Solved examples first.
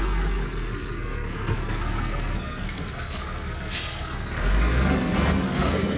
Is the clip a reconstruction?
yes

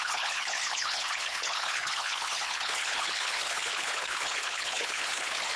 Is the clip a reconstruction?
yes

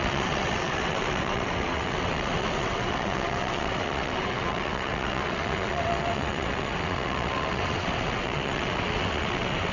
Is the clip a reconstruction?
yes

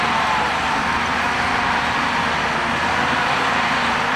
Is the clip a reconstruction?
yes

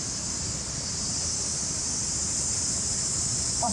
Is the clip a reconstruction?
yes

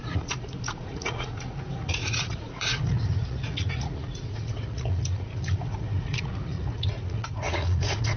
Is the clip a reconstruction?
yes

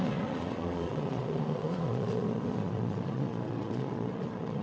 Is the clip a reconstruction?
yes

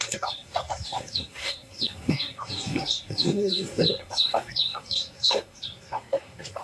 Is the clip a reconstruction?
yes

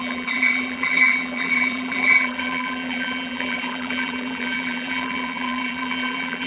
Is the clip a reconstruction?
yes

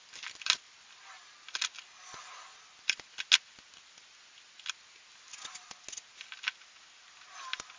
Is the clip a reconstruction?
no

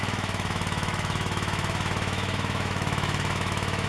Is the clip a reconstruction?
yes